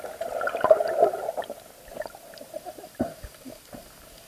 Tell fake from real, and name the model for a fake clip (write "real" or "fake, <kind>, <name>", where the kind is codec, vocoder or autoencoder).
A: real